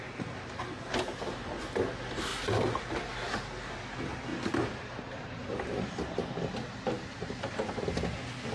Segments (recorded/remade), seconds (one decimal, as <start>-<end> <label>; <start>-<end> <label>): 0.0-4.3 recorded; 4.3-5.9 remade; 5.9-8.5 recorded